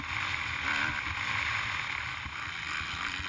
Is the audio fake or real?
real